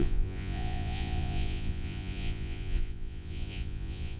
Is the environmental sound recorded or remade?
remade